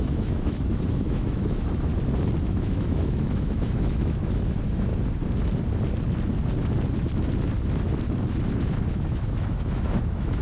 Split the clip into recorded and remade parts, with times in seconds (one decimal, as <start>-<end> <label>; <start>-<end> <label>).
0.0-1.9 remade; 1.9-2.4 recorded; 2.4-4.9 remade; 4.9-8.9 recorded; 8.9-10.4 remade